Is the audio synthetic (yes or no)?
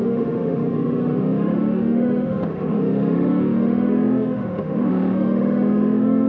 yes